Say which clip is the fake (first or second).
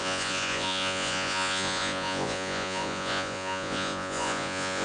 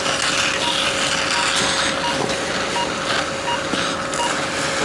first